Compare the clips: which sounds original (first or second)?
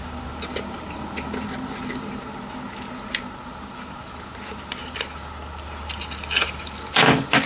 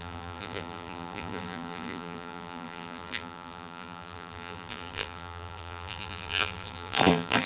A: first